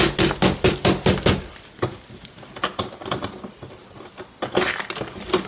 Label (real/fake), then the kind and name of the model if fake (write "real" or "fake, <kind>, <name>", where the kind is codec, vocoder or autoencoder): real